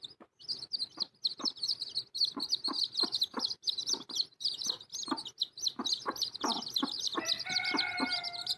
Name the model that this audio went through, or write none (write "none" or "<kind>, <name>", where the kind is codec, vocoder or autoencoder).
none